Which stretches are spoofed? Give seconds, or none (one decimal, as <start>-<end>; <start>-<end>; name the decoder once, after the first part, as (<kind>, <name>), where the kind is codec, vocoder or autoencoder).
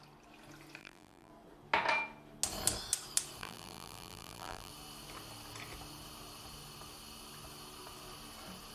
0.8-1.3 (vocoder, BigVGAN v2); 3.4-4.7